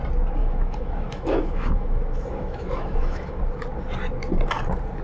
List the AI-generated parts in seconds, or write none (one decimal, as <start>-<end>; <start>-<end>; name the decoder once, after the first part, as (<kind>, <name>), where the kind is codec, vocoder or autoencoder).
0.4-3.4 (autoencoder, DAC-VAE)